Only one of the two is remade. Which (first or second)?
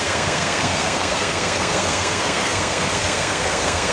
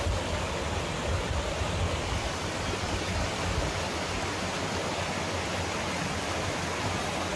first